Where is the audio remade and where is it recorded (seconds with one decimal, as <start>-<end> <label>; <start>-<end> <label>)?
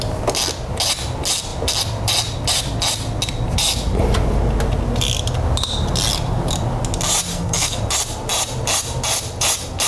0.0-7.3 recorded; 7.3-7.8 remade; 7.8-9.9 recorded